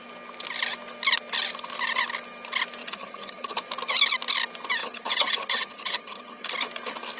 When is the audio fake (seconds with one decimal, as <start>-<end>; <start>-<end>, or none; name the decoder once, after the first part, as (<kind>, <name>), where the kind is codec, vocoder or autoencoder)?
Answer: 2.8-3.6 (vocoder, HiFi-GAN); 4.8-6.5